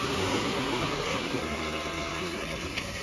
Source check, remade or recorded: remade